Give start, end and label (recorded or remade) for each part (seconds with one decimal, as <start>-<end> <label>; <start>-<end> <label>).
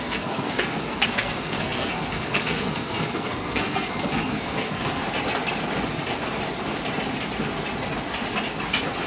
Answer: 0.0-5.0 remade; 5.0-9.1 recorded